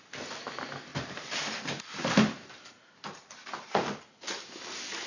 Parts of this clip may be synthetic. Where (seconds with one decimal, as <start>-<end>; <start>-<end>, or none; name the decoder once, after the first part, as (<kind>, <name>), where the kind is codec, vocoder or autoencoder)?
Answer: 0.9-4.0 (vocoder, BigVGAN v2)